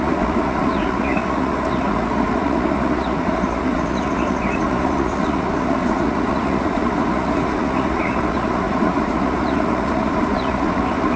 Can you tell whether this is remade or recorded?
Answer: remade